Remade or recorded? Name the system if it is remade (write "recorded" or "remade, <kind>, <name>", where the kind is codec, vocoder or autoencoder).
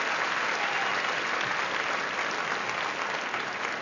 recorded